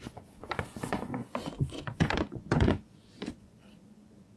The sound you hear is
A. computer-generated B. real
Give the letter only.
A